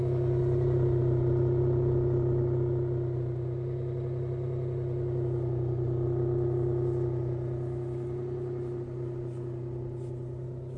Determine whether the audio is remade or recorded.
recorded